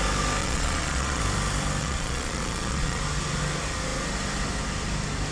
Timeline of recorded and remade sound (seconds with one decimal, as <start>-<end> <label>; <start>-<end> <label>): 0.0-0.4 recorded; 0.4-1.2 remade; 1.2-1.8 recorded; 1.8-3.0 remade; 3.0-5.3 recorded